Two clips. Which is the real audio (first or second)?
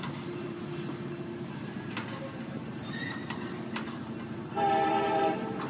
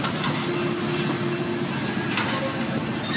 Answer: second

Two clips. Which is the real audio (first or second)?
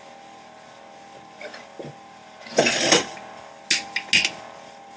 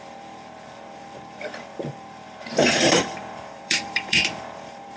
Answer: first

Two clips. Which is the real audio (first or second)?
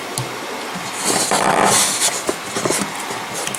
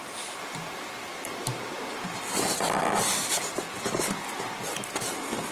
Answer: first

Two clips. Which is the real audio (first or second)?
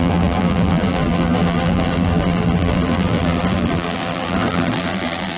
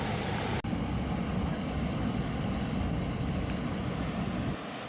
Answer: second